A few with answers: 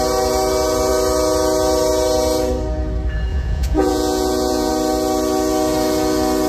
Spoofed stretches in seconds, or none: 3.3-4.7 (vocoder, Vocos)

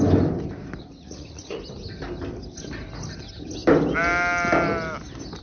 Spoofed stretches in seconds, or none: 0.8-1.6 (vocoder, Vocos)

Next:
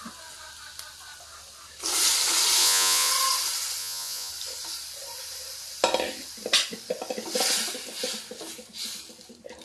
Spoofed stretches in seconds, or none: 2.6-3.1 (vocoder, Vocos); 3.8-4.3

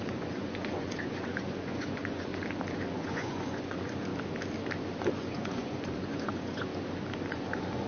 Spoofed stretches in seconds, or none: 0.0-2.3 (vocoder, Vocos); 2.9-4.1; 5.1-6.7; 7.3-7.9

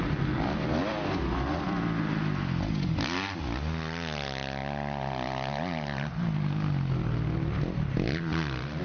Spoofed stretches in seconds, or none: none